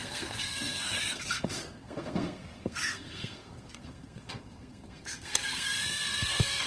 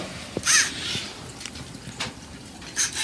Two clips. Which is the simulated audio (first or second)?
first